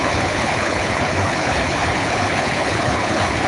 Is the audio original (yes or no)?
no